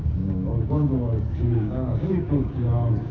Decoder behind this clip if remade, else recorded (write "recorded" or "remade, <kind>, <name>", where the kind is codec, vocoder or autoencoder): remade, codec, DAC